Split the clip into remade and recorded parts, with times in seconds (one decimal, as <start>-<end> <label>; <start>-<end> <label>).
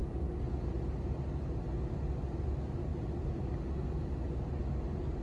0.0-5.2 recorded